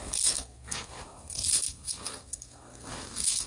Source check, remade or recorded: remade